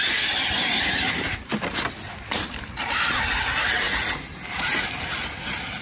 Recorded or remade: recorded